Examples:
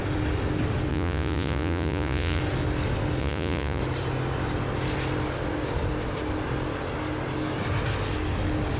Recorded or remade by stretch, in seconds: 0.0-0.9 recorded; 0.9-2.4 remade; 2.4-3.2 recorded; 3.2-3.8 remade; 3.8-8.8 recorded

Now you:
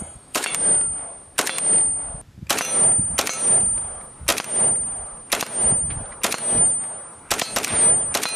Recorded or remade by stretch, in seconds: 0.0-0.5 remade; 0.5-8.4 recorded

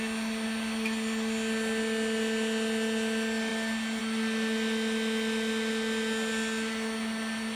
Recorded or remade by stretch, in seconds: 0.0-7.6 recorded

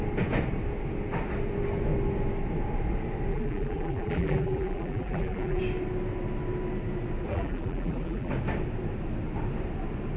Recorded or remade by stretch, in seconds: 0.0-3.3 recorded; 3.3-5.6 remade; 5.6-7.3 recorded; 7.3-8.3 remade; 8.3-10.2 recorded